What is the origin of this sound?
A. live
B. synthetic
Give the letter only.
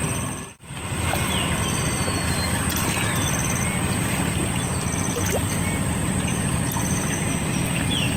A